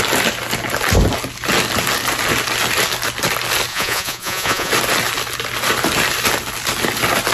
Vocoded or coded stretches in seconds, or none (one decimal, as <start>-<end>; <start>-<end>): 3.7-4.7